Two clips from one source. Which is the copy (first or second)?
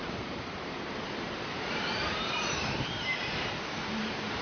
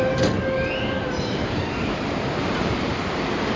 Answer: first